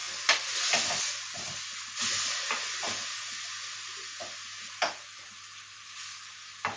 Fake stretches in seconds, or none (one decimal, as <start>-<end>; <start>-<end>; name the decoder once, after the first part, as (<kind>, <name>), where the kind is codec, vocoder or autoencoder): none